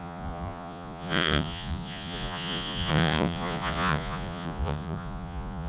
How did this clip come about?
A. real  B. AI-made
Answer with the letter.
B